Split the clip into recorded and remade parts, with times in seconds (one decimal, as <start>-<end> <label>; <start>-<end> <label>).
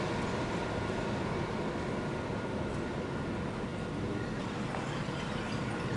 0.0-6.0 recorded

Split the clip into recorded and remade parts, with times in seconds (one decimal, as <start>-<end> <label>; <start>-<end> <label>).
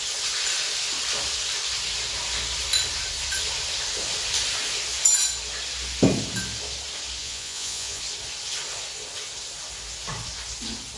0.0-7.2 recorded; 7.2-8.0 remade; 8.0-11.0 recorded